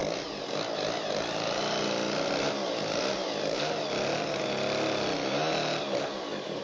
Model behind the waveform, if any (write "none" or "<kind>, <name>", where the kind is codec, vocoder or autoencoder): none